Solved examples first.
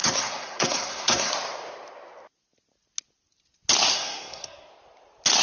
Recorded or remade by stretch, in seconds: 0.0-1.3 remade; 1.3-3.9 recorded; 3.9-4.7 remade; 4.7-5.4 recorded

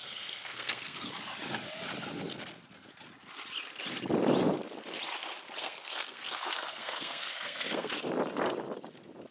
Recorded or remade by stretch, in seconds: 0.0-1.1 remade; 1.1-5.6 recorded; 5.6-7.9 remade; 7.9-9.3 recorded

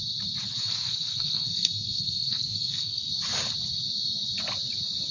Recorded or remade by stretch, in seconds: 0.0-0.7 recorded; 0.7-3.1 remade; 3.1-5.1 recorded

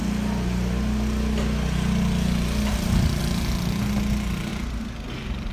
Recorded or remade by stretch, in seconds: 0.0-5.5 recorded

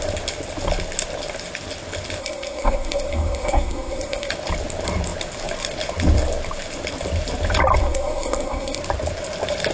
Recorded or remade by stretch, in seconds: 0.0-2.2 recorded; 2.2-4.3 remade; 4.3-7.8 recorded; 7.8-8.8 remade; 8.8-9.7 recorded

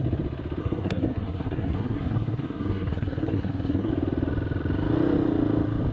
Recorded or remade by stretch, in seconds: 0.0-0.6 recorded; 0.6-3.9 remade; 3.9-5.9 recorded

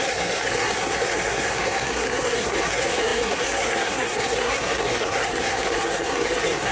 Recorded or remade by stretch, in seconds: 0.0-6.7 remade